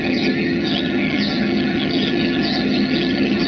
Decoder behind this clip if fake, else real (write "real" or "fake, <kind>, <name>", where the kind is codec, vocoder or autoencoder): fake, vocoder, HiFi-GAN